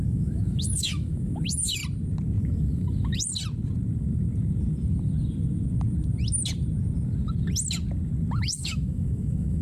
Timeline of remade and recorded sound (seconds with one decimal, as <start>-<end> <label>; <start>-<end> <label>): 0.0-1.8 remade; 1.8-2.4 recorded; 2.4-3.3 remade; 3.3-8.3 recorded; 8.3-9.6 remade